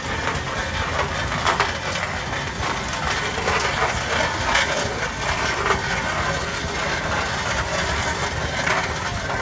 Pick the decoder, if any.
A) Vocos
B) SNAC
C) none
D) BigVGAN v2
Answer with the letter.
C